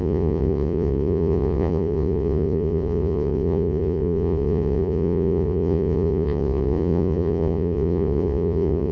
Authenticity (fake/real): fake